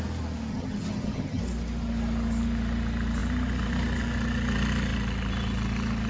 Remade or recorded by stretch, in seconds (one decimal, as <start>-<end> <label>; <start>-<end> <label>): 0.0-0.5 recorded; 0.5-1.4 remade; 1.4-6.1 recorded

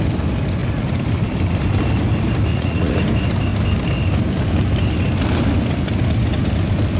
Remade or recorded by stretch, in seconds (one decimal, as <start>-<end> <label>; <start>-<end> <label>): 0.0-2.5 recorded; 2.5-3.0 remade; 3.0-7.0 recorded

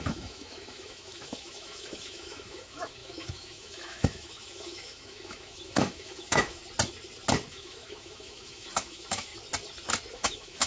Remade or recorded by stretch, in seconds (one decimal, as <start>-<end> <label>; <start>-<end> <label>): 0.0-6.6 remade; 6.6-7.5 recorded; 7.5-9.3 remade; 9.3-10.1 recorded; 10.1-10.7 remade

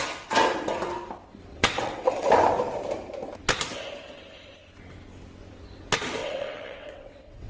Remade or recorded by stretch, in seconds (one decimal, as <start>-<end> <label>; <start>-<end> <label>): 0.0-1.5 recorded; 1.5-2.3 remade; 2.3-6.2 recorded; 6.2-7.5 remade

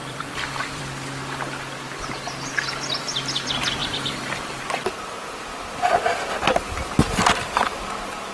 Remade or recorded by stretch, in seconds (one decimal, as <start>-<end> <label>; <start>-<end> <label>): 0.0-0.8 remade; 0.8-3.8 recorded; 3.8-4.6 remade; 4.6-8.3 recorded

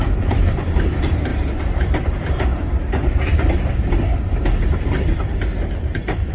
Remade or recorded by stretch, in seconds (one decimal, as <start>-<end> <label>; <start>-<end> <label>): 0.0-6.3 remade

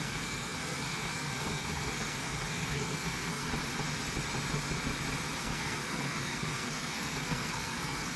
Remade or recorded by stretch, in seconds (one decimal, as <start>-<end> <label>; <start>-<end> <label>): 0.0-3.5 remade; 3.5-5.4 recorded; 5.4-8.2 remade

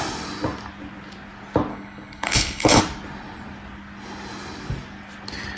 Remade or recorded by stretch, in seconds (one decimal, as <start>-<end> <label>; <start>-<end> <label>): 0.0-1.7 recorded; 1.7-2.8 remade; 2.8-5.6 recorded